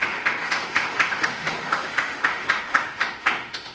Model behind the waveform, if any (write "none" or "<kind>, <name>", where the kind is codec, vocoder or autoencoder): autoencoder, DAC-VAE